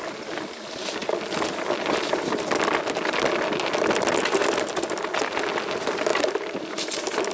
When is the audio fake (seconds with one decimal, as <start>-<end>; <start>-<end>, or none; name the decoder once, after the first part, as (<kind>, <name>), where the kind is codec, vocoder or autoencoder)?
6.1-6.7 (vocoder, BigVGAN v2)